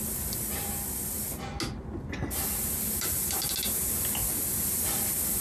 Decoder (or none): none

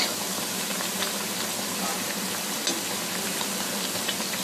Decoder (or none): none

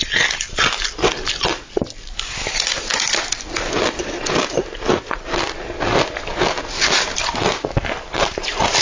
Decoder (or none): none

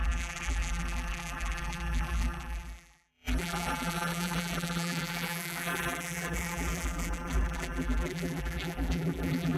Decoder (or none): vocoder, BigVGAN v2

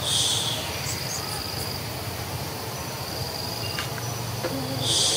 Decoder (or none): none